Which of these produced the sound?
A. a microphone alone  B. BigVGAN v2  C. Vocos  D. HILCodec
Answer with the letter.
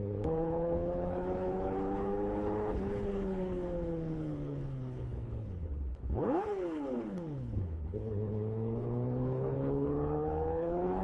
D